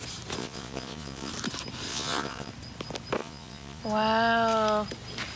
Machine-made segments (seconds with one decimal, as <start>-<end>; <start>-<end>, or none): 0.4-1.3; 1.9-2.5; 3.2-3.8